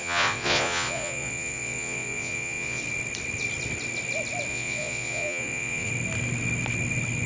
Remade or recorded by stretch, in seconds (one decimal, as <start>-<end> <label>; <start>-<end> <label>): 0.0-2.8 remade; 2.8-4.5 recorded; 4.5-5.9 remade; 5.9-7.3 recorded